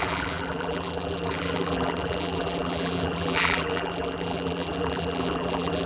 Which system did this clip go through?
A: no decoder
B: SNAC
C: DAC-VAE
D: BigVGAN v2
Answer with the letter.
D